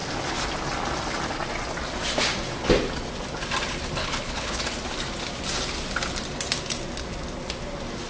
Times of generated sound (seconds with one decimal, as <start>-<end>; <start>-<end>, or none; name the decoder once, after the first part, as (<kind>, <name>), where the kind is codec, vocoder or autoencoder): 4.0-4.6 (codec, HILCodec)